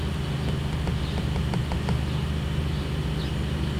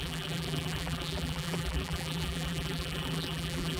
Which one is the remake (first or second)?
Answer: second